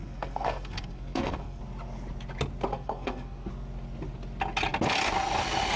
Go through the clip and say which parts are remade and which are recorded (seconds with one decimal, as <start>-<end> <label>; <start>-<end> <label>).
0.0-1.6 remade; 1.6-2.7 recorded; 2.7-3.5 remade; 3.5-5.8 recorded